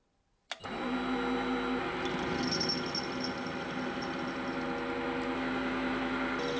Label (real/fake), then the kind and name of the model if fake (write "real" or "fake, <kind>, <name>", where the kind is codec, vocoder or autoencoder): real